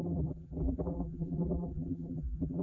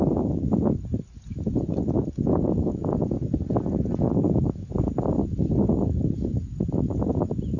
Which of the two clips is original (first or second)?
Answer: second